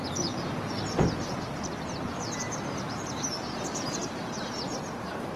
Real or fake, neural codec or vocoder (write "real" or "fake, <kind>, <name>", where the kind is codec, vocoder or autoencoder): real